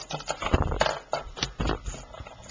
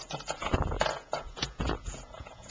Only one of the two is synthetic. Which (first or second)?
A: second